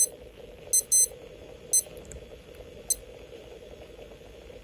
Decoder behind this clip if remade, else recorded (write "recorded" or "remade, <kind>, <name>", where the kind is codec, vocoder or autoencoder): recorded